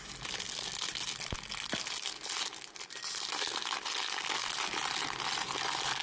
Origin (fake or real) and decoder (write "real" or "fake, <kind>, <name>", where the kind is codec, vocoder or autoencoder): real